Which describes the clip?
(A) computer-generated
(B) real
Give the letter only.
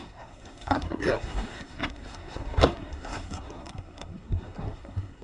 A